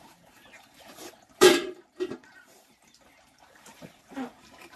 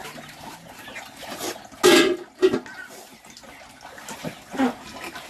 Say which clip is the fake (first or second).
first